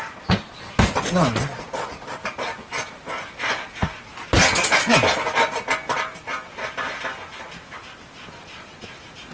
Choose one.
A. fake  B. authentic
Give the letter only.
B